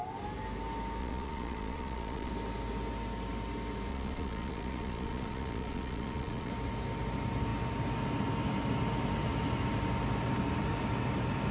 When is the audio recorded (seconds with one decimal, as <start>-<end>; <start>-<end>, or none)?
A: 0.0-1.0; 2.3-3.9; 6.5-11.5

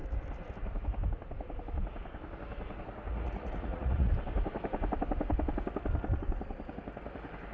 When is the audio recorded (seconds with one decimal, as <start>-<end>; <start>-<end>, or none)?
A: 0.0-3.1; 4.1-7.5

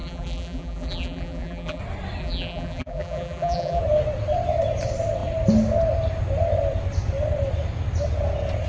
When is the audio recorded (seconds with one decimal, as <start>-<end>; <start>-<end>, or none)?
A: 1.8-2.2; 3.8-8.7

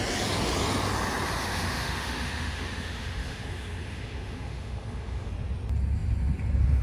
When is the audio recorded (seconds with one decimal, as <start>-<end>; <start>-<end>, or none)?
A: 0.0-1.4; 5.3-6.8

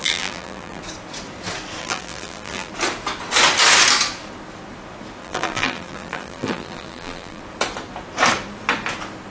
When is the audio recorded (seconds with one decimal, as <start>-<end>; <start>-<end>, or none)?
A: 0.8-1.8; 2.7-5.2; 7.4-9.3

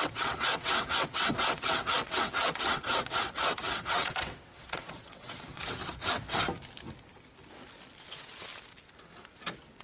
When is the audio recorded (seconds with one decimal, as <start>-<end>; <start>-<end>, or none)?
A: 5.8-8.1; 8.5-9.8

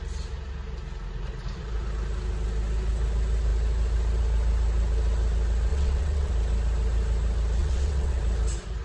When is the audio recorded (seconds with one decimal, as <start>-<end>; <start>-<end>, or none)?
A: 0.0-5.7; 6.3-7.6; 8.2-8.8

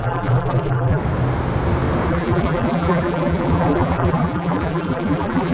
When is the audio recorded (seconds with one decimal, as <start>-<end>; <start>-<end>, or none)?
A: 1.0-2.1